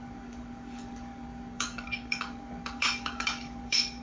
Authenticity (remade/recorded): remade